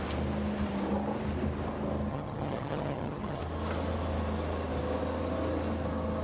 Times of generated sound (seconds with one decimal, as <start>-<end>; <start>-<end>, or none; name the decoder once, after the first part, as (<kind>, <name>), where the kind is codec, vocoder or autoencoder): 2.1-3.4 (vocoder, HiFi-GAN)